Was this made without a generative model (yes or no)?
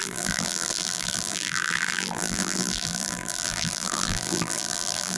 no